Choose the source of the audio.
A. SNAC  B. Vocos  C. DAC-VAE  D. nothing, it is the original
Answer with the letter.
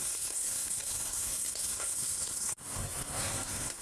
A